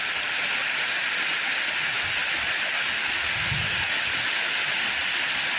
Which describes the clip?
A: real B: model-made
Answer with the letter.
A